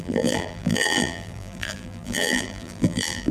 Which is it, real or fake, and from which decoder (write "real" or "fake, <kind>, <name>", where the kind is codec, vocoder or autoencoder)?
fake, vocoder, BigVGAN v2